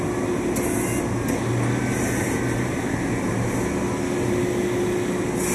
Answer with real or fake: real